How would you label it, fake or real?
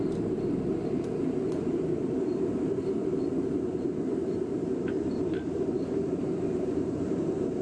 fake